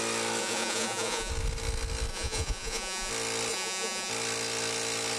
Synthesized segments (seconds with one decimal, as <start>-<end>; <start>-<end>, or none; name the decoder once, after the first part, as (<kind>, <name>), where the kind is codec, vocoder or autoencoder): 0.4-1.3 (vocoder, Vocos); 2.1-3.1; 3.5-4.1